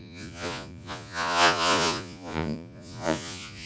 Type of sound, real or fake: fake